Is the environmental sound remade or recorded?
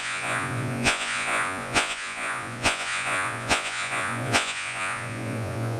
remade